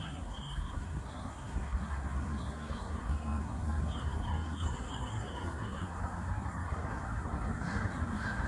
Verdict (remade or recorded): remade